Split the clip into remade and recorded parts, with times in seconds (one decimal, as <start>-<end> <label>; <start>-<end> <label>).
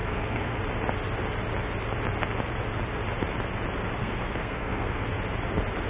0.0-0.6 remade; 0.6-4.0 recorded; 4.0-5.0 remade; 5.0-5.9 recorded